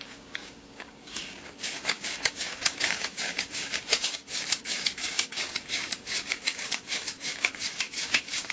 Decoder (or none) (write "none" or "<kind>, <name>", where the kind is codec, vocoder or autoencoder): codec, DAC